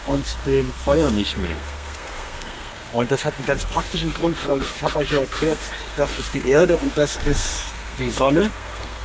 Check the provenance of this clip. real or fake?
fake